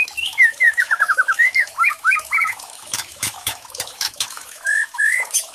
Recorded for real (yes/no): no